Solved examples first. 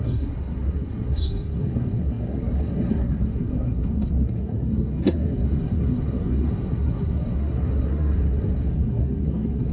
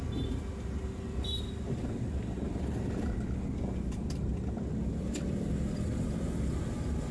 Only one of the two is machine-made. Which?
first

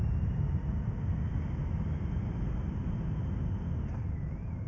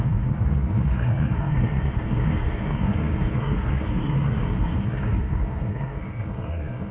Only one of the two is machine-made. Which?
second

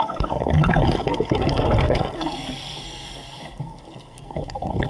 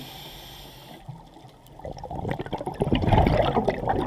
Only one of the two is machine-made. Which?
first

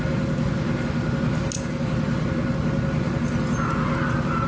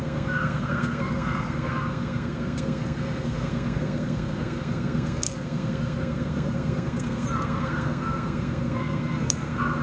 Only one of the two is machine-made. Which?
second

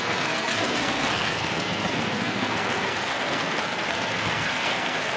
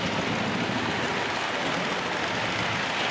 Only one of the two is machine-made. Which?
first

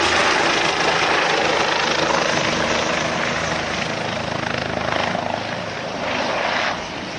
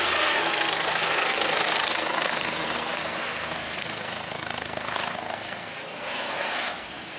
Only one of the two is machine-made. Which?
second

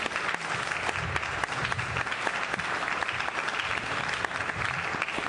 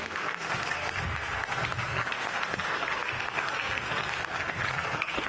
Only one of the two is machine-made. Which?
second